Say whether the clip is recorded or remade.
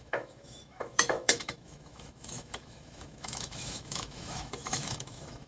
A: remade